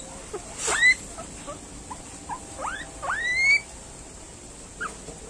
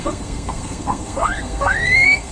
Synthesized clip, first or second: second